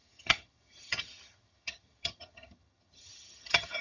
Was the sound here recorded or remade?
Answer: remade